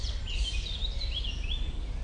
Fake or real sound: real